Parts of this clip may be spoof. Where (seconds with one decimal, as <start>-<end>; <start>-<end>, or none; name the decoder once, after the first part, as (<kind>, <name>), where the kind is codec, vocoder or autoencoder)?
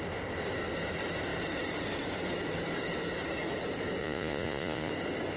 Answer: 4.0-4.9 (vocoder, Vocos)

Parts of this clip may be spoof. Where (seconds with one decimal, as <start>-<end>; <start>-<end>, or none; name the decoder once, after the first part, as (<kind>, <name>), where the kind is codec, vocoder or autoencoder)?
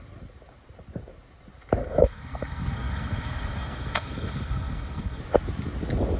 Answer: 1.8-5.2 (codec, SNAC)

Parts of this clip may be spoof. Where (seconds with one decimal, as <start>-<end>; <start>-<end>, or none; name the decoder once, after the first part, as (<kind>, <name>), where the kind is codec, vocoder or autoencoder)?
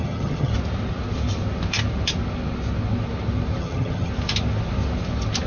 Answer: 0.0-0.5 (vocoder, HiFi-GAN); 3.6-4.1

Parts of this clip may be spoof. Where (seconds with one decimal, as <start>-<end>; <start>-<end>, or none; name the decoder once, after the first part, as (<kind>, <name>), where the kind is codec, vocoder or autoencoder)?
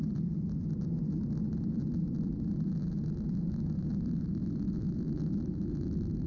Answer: 3.5-6.3 (autoencoder, DAC-VAE)